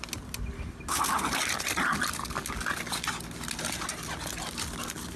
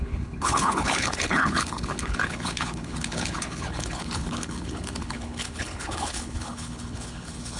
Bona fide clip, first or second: first